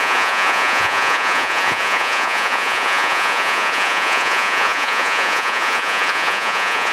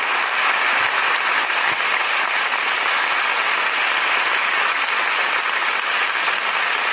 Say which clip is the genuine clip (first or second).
second